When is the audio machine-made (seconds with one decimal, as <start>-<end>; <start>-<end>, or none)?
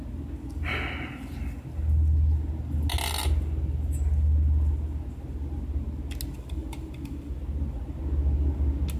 6.6-8.0